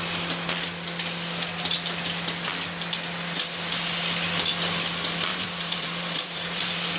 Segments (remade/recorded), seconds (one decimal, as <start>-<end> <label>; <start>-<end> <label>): 0.0-5.3 recorded; 5.3-7.0 remade